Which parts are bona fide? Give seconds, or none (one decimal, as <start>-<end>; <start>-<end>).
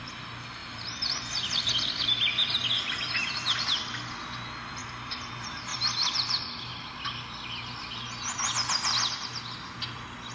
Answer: 0.0-0.6; 1.7-4.8; 5.3-5.7; 6.7-10.3